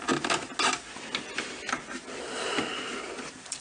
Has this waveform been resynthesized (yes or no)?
no